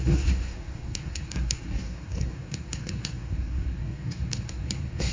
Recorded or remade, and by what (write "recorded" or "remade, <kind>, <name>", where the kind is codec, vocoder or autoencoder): remade, codec, SNAC